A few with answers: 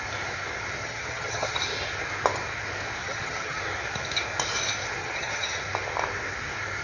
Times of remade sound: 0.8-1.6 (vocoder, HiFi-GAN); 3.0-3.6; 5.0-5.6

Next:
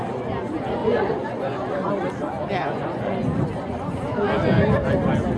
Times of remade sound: 0.8-1.9 (vocoder, Vocos); 2.6-3.4